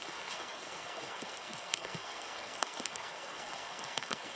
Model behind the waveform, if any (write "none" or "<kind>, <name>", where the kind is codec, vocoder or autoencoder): codec, SNAC